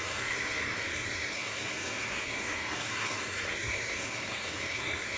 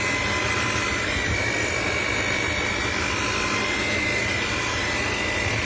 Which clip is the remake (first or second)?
first